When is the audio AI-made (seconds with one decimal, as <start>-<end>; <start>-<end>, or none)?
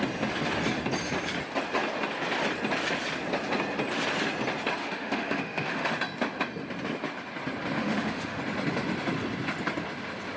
4.8-5.9; 7.8-8.4